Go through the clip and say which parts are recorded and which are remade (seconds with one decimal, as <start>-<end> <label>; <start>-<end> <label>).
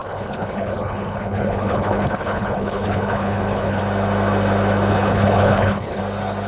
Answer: 0.0-3.8 remade; 3.8-4.9 recorded; 4.9-6.0 remade; 6.0-6.5 recorded